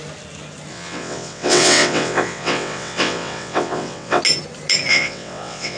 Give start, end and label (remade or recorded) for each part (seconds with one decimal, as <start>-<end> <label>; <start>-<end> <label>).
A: 0.0-0.7 recorded; 0.7-4.2 remade; 4.2-4.9 recorded; 4.9-5.8 remade